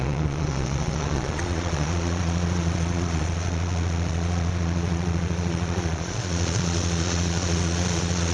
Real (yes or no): no